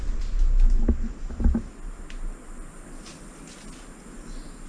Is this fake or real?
real